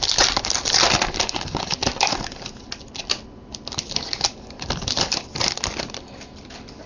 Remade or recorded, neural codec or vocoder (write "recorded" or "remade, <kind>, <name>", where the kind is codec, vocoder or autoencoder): recorded